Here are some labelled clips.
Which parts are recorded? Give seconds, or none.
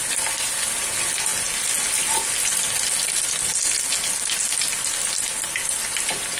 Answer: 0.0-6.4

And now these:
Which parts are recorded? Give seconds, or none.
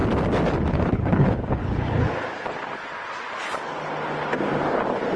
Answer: 0.0-0.7; 2.1-5.2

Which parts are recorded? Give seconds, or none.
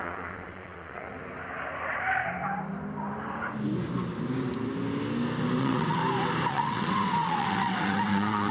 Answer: 1.2-5.6; 6.0-6.5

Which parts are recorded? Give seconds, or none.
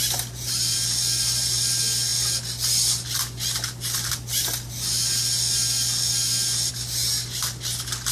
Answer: 0.0-8.1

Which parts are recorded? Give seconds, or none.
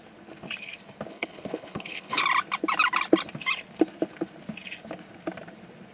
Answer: 0.0-1.1; 2.2-5.9